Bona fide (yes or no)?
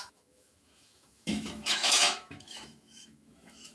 no